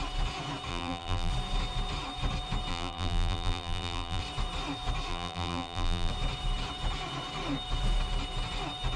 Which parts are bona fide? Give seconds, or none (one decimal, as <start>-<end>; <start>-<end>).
0.0-0.7; 1.3-2.7; 4.2-5.1; 6.1-9.0